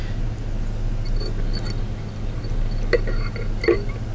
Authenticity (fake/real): real